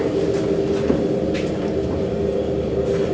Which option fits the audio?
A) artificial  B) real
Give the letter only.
B